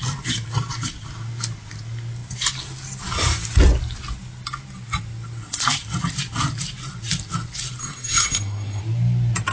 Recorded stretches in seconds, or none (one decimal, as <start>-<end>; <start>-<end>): 0.0-7.8; 8.8-9.5